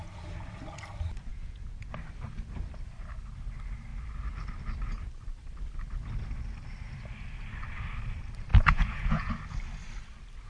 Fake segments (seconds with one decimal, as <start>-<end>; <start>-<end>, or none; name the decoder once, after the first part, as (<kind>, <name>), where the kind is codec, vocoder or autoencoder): 1.3-1.9 (vocoder, Vocos); 8.5-9.3